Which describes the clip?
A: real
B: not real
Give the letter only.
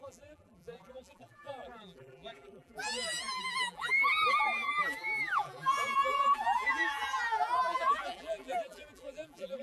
B